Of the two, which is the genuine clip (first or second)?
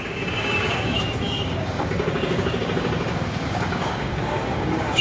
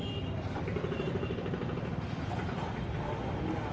second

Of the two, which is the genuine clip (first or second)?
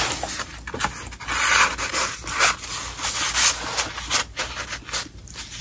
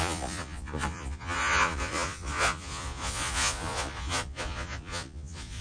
first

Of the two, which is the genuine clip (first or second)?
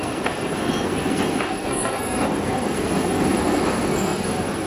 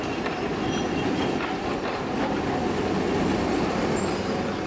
second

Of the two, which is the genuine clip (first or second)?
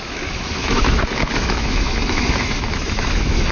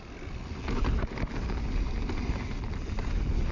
second